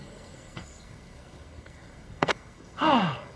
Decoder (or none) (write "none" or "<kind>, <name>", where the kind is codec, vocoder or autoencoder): codec, SNAC